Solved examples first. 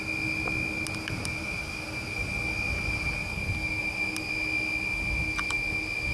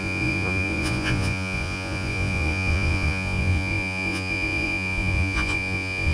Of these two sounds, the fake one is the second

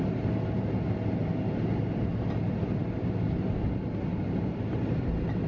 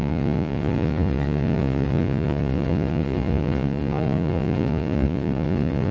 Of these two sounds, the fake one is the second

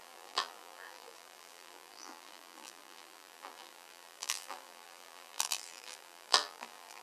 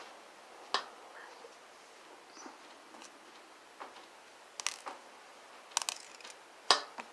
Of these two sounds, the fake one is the first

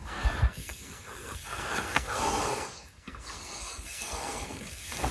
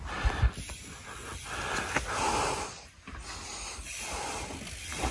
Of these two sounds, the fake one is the first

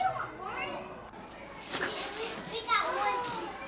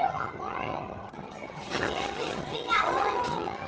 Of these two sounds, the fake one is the second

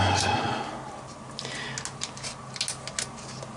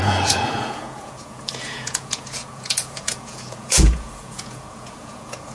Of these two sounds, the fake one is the second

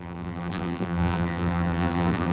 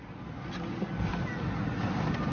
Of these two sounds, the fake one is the first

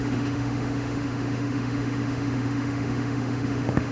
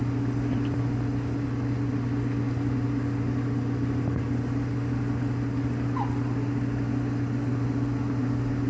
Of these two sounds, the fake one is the first